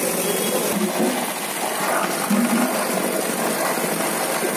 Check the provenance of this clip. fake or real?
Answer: real